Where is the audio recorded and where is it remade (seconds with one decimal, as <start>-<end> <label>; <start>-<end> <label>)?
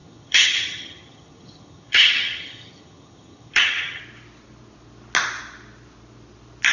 0.0-4.0 remade; 4.0-6.7 recorded